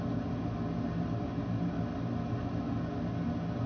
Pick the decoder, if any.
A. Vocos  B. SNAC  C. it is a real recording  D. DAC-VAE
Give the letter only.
C